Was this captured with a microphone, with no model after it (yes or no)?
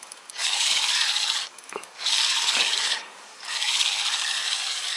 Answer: no